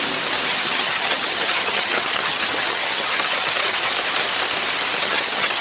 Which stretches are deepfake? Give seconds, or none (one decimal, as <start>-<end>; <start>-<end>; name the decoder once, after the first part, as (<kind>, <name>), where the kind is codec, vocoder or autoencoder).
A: 0.5-3.9 (vocoder, HiFi-GAN); 5.0-5.6